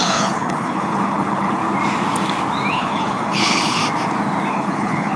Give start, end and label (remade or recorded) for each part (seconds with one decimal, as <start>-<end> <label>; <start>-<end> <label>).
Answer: 0.0-1.6 remade; 1.6-2.7 recorded; 2.7-3.8 remade; 3.8-4.5 recorded; 4.5-5.2 remade